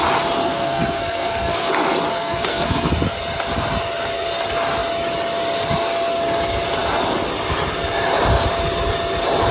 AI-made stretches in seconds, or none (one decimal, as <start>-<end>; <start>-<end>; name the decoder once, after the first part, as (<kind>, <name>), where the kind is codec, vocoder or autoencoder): 0.4-1.7 (codec, SNAC); 2.1-2.9